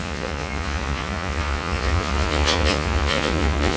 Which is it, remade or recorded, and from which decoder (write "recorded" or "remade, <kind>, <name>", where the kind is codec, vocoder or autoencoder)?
remade, vocoder, Vocos